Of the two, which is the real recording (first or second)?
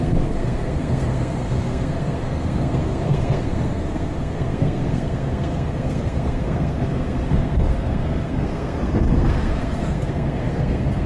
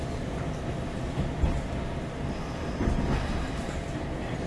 second